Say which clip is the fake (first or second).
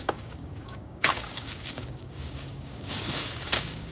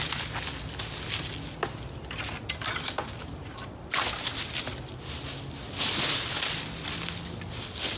first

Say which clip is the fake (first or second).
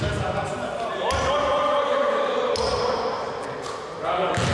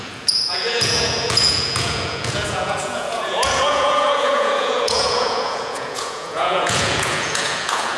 second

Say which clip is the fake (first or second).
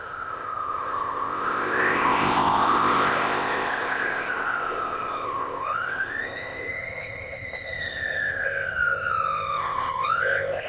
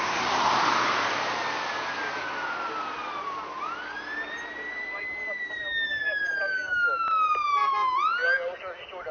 first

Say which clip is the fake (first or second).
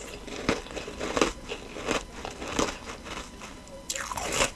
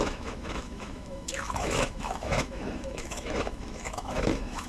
second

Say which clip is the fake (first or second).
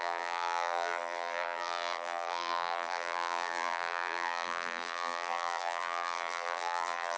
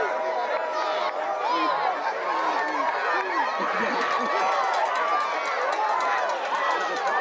first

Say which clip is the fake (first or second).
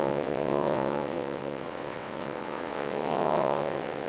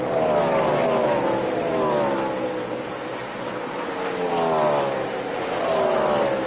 first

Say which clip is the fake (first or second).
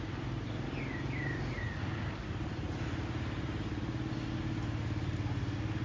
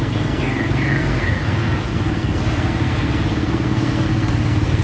second